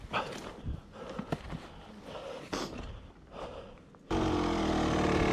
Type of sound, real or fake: real